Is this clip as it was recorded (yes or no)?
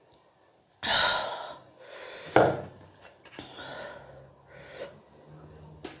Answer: yes